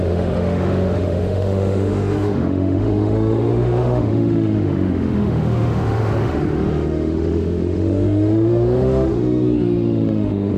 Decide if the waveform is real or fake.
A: fake